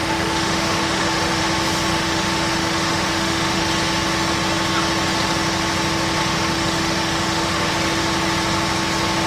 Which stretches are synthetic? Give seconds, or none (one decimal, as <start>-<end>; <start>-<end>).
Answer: 0.0-1.4; 1.9-3.7; 6.2-7.7